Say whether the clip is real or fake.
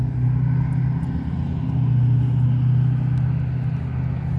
real